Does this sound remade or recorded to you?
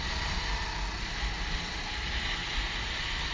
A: recorded